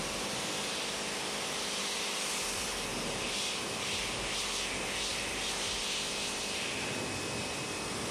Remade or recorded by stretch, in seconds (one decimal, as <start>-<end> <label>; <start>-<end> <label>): 0.0-2.9 recorded; 2.9-4.3 remade; 4.3-5.1 recorded; 5.1-5.8 remade; 5.8-8.1 recorded